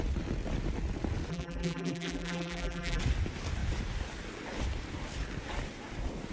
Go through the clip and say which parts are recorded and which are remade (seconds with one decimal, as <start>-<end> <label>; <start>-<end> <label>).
0.0-1.3 recorded; 1.3-3.0 remade; 3.0-6.3 recorded